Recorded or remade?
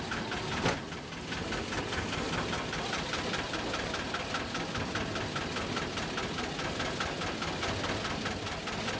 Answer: recorded